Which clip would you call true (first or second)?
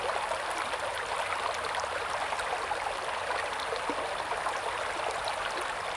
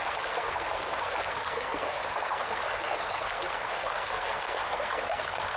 first